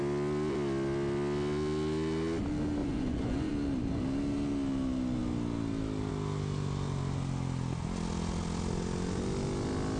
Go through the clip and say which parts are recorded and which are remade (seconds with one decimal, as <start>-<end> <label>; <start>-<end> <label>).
0.0-2.8 recorded; 2.8-3.5 remade; 3.5-10.0 recorded